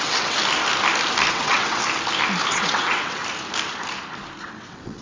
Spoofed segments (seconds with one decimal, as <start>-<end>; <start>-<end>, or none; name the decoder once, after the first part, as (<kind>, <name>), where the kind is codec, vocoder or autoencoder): 0.0-0.4 (vocoder, WaveNeXt); 1.3-1.8; 2.5-3.2; 4.4-5.0